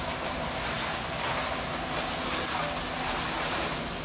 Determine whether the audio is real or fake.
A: real